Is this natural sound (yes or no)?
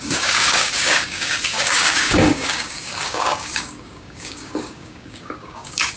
no